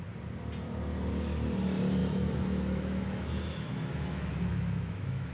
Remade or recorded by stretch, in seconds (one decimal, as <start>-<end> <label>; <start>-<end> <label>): 0.0-2.0 recorded; 2.0-5.3 remade